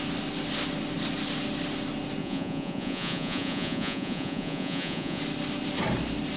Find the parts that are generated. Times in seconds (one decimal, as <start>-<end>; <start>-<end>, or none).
2.2-5.2